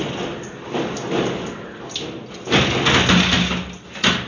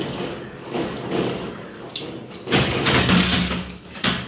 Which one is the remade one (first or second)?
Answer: second